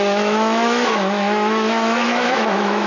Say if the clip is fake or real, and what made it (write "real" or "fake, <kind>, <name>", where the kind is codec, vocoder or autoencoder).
fake, autoencoder, DAC-VAE